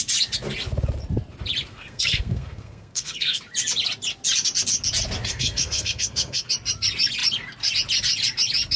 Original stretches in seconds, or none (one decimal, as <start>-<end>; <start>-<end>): 0.0-1.7; 3.4-5.3; 6.5-8.8